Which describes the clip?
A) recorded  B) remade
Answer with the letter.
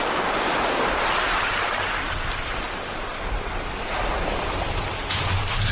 A